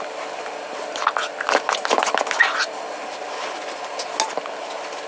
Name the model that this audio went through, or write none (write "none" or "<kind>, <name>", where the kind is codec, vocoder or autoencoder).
none